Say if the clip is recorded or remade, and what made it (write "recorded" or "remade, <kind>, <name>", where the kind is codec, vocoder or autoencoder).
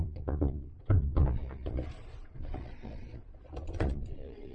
remade, vocoder, Vocos